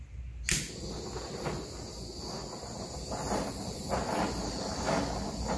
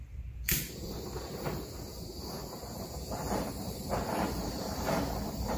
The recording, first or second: first